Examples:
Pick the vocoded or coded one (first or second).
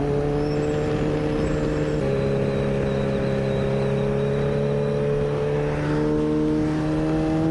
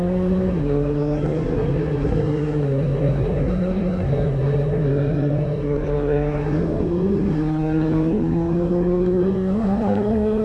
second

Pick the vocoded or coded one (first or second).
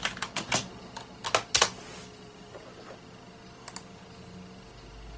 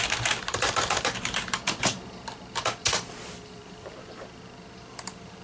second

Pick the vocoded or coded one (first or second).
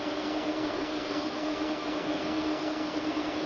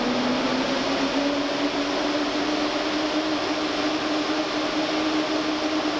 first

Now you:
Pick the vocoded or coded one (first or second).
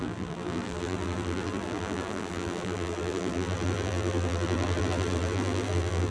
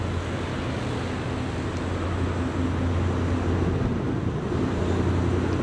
first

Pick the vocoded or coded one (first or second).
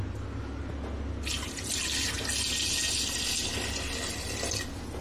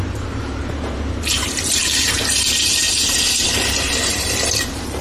second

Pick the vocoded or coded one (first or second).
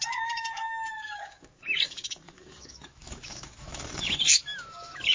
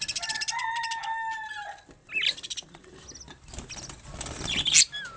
first